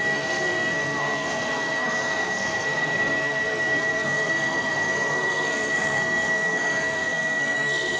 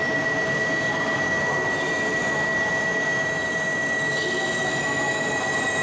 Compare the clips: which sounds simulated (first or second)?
first